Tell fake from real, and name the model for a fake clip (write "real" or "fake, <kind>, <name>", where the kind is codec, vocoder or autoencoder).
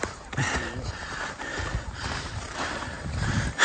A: fake, vocoder, BigVGAN v2